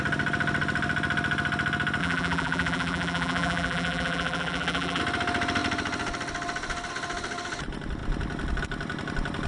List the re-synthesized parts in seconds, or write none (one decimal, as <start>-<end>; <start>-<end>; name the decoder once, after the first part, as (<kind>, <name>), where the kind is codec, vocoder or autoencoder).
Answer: 2.0-5.0 (vocoder, BigVGAN v2)